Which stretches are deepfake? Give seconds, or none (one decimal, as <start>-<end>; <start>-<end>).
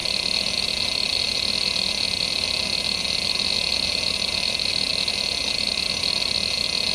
none